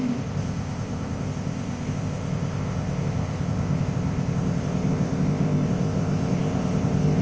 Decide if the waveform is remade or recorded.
remade